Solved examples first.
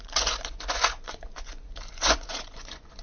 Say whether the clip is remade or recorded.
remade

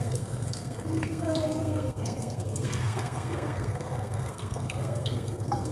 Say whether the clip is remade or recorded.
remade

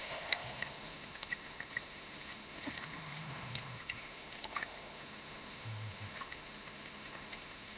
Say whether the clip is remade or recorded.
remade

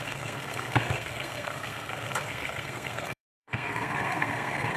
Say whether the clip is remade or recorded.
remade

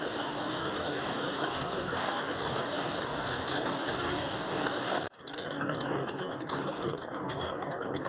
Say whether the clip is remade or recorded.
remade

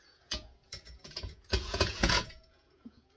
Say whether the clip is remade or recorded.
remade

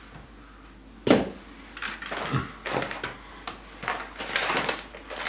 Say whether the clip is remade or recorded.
recorded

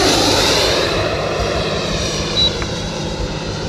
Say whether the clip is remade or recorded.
remade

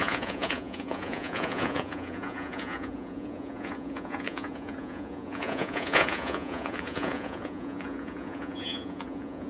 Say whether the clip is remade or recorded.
remade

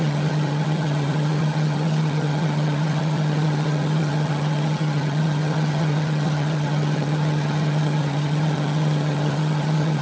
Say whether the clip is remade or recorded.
remade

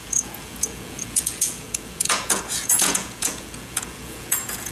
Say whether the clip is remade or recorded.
remade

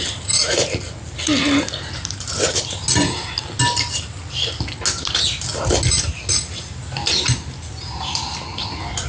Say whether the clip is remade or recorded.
recorded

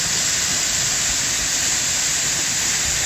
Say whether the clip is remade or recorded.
recorded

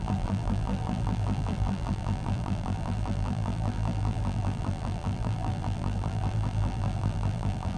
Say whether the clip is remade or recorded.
remade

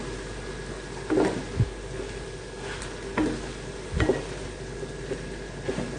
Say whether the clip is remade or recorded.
recorded